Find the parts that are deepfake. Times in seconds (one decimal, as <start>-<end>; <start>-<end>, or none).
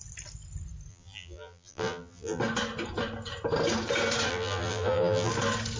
0.9-2.4; 4.3-5.3